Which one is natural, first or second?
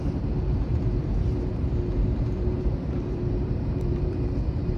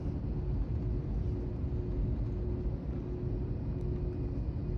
second